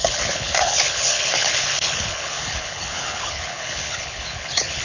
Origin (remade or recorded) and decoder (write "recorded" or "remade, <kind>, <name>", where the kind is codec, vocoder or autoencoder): remade, codec, HILCodec